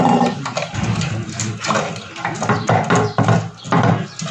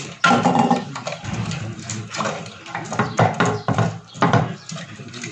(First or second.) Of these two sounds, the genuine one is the first